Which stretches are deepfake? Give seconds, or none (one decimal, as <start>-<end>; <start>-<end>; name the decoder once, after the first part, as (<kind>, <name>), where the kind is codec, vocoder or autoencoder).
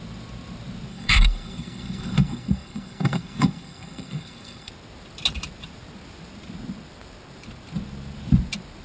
0.9-4.7 (codec, SNAC)